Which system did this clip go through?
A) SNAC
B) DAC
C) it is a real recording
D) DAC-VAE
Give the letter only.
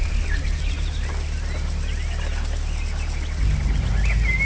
C